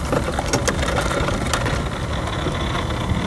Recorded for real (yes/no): yes